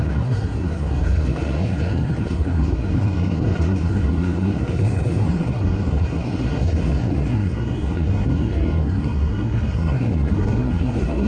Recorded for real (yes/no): no